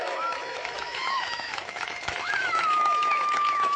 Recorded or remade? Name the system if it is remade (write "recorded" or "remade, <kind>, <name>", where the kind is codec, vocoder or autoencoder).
remade, autoencoder, DAC-VAE